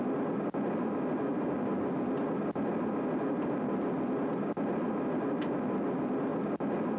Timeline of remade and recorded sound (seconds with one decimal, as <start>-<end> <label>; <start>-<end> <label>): 0.0-7.0 recorded